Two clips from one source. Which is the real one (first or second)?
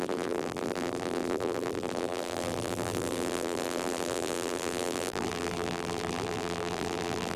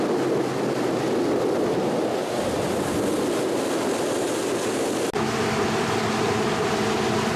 second